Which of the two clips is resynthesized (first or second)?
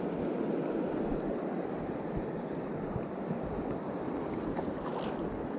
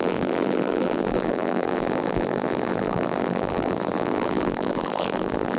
second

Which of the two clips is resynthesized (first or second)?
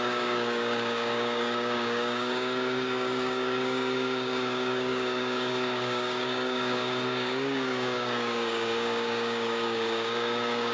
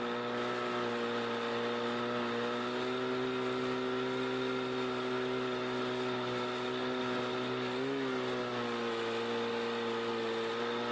first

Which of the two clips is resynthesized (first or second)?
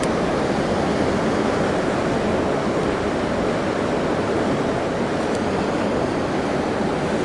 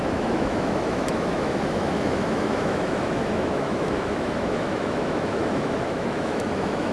second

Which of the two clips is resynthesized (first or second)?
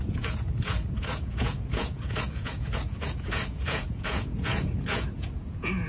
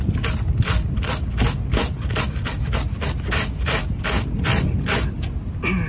first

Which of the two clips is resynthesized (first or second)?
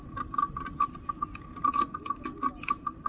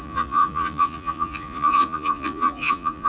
second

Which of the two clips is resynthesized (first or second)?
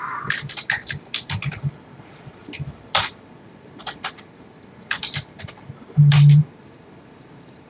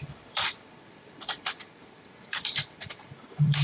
second